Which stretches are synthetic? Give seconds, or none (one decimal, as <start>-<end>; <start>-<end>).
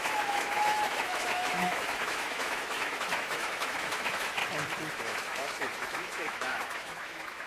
0.0-4.4; 4.9-7.5